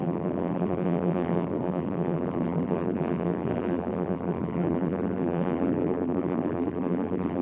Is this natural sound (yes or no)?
no